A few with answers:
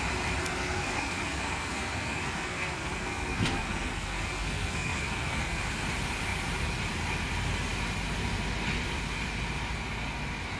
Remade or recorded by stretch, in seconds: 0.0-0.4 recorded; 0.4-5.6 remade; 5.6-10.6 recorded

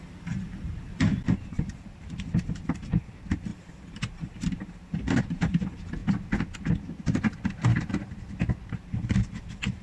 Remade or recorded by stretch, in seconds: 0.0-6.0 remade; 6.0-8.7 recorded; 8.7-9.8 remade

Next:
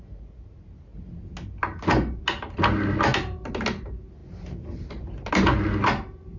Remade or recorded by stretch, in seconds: 0.0-6.4 recorded